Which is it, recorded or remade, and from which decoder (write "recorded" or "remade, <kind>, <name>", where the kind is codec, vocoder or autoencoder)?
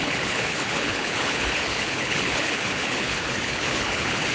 remade, codec, HILCodec